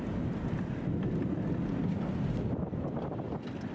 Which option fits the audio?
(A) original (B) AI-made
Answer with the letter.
A